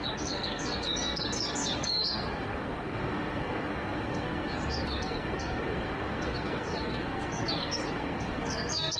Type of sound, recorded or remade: remade